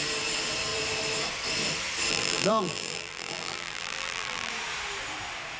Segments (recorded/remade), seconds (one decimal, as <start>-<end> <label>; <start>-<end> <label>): 0.0-2.1 recorded; 2.1-4.5 remade; 4.5-5.6 recorded